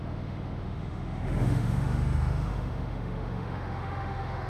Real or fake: fake